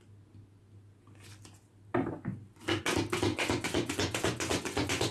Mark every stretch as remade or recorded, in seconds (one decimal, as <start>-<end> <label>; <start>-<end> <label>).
0.0-3.3 recorded; 3.3-5.1 remade